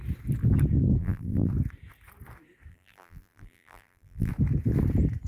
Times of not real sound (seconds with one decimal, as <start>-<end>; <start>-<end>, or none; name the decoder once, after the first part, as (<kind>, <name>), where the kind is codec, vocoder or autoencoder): 1.0-1.5 (vocoder, BigVGAN v2); 2.7-4.3